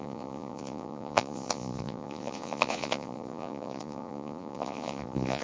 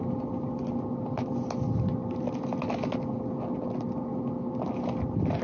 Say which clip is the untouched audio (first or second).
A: second